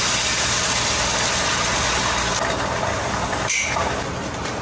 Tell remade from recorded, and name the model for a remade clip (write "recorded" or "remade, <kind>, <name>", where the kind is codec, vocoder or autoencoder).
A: recorded